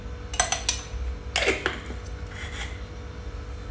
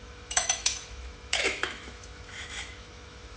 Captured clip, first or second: first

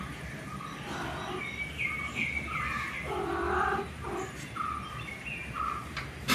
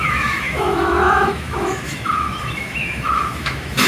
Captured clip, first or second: first